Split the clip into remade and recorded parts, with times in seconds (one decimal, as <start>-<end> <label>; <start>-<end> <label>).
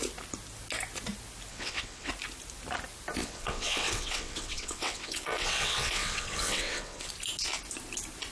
0.0-1.5 recorded; 1.5-2.1 remade; 2.1-3.2 recorded; 3.2-7.1 remade; 7.1-8.3 recorded